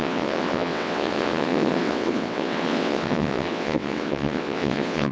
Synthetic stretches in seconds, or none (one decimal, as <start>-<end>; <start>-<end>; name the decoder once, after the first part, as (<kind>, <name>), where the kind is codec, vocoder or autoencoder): 0.0-5.1 (vocoder, WaveNeXt)